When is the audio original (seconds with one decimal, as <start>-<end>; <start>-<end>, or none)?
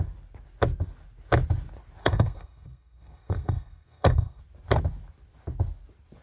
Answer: 0.0-2.0; 4.4-6.2